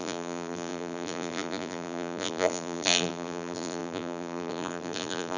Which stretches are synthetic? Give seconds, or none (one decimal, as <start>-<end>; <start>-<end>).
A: 0.0-5.4